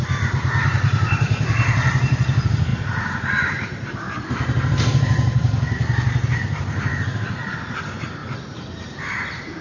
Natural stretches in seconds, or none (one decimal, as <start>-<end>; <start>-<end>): 8.2-9.1